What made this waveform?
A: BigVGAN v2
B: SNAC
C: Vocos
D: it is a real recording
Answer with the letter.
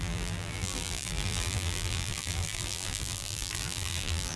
A